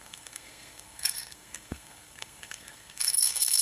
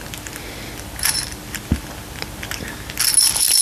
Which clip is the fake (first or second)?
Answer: first